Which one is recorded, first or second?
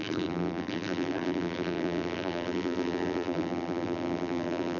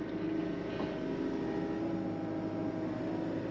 second